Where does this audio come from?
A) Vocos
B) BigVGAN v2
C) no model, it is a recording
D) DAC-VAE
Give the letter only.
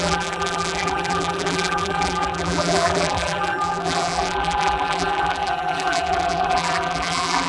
B